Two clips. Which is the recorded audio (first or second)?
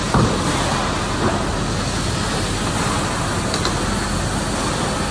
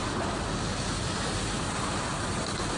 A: first